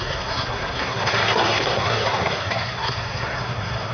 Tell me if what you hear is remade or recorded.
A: remade